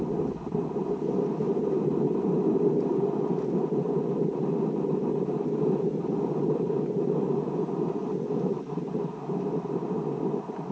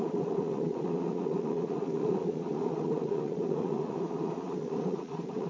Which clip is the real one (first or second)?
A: first